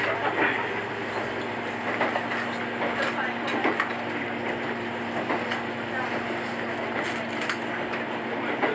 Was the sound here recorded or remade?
recorded